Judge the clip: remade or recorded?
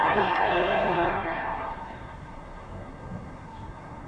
remade